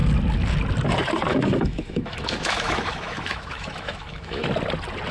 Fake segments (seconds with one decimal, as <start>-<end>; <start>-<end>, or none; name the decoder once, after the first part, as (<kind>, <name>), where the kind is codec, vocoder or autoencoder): 1.3-4.4 (autoencoder, DAC-VAE)